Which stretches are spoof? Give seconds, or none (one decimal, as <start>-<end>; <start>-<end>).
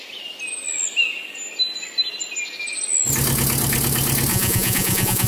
4.3-5.3